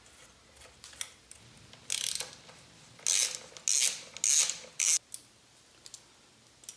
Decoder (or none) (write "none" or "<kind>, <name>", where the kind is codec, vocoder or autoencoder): none